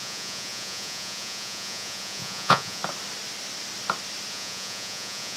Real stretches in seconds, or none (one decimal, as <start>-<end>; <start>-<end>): 2.8-4.3